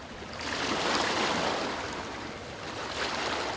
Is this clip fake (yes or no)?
no